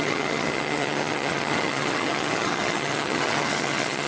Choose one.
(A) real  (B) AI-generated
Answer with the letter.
B